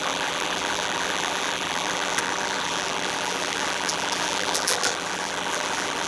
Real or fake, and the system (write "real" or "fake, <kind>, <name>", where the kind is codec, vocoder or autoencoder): fake, vocoder, BigVGAN v2